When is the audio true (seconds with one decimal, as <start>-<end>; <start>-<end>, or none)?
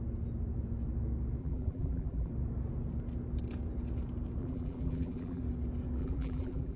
0.0-1.4; 2.3-4.4; 5.4-6.0